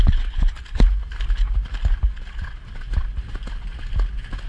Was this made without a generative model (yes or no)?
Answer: yes